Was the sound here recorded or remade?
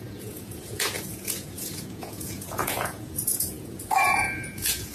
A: remade